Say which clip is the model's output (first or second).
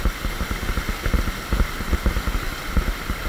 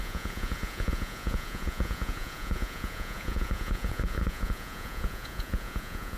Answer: second